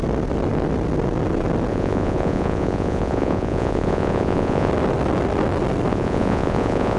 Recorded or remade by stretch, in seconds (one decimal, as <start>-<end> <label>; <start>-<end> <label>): 0.0-1.7 recorded; 1.7-4.7 remade; 4.7-5.9 recorded; 5.9-7.0 remade

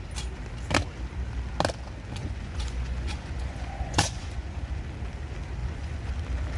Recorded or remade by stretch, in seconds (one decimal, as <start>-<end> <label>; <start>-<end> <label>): 0.0-2.2 recorded; 2.2-4.8 remade; 4.8-5.6 recorded; 5.6-6.1 remade; 6.1-6.6 recorded

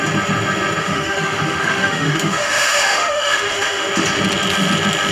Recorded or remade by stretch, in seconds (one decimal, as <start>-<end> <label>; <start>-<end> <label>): 0.0-0.8 recorded; 0.8-3.9 remade; 3.9-5.1 recorded

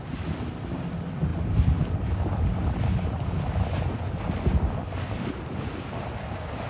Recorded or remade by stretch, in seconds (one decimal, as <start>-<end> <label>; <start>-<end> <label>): 0.0-6.7 recorded

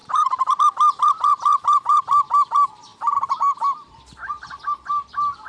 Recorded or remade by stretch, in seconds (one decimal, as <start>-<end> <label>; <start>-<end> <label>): 0.0-0.6 remade; 0.6-2.9 recorded; 2.9-4.0 remade; 4.0-5.5 recorded

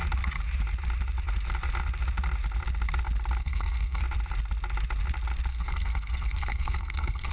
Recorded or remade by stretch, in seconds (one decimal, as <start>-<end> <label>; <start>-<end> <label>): 0.0-3.4 recorded; 3.4-4.0 remade; 4.0-5.5 recorded; 5.5-7.3 remade

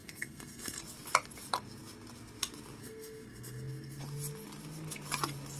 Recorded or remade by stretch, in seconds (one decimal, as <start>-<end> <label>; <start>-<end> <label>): 0.0-0.8 remade; 0.8-2.8 recorded; 2.8-4.0 remade; 4.0-5.6 recorded